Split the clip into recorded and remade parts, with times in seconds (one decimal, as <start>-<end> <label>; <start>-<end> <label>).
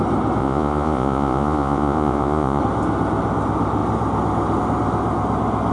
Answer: 0.0-0.4 recorded; 0.4-2.6 remade; 2.6-5.7 recorded